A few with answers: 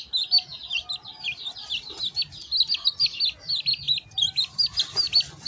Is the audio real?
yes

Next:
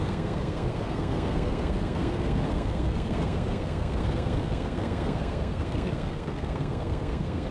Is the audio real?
no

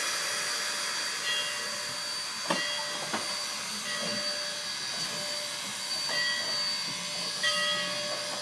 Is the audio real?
yes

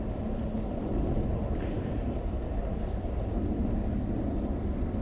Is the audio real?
yes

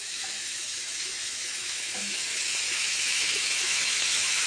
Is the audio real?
no